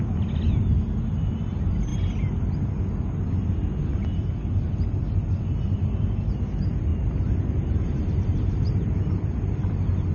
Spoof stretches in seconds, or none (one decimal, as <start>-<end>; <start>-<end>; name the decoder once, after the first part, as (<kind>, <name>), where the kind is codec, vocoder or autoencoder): 6.9-8.9 (vocoder, BigVGAN v2)